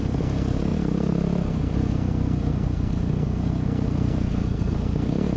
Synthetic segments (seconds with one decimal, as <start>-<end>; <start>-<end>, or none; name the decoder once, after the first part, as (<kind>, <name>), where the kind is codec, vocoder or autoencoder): 0.0-5.4 (codec, SNAC)